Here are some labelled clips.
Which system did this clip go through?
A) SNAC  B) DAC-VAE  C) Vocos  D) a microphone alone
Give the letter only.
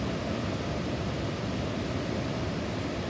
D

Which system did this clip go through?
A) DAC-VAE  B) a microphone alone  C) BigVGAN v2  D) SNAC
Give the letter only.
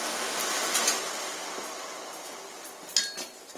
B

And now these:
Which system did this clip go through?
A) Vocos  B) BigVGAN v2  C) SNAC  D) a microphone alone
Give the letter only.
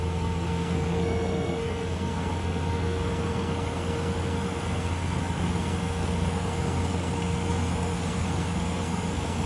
C